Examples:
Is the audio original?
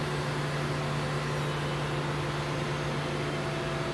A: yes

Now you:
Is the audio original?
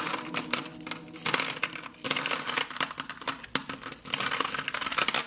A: yes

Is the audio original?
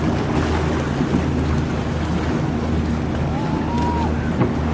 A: yes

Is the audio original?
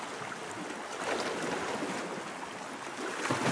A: yes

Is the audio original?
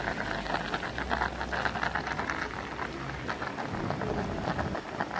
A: yes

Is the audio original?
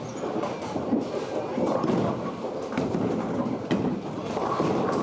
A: yes